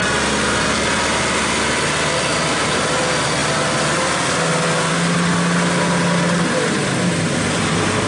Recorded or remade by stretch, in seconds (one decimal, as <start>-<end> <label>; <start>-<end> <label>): 0.0-8.1 recorded